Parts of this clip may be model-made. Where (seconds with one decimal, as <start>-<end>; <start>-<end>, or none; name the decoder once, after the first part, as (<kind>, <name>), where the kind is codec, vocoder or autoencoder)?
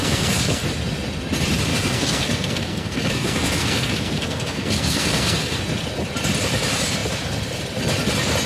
0.0-0.6 (codec, SNAC); 1.7-5.6